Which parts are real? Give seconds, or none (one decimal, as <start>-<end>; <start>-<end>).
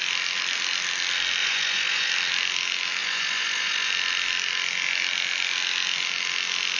0.0-1.4; 2.1-3.0; 3.9-6.8